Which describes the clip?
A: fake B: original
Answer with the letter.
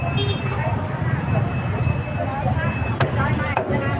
B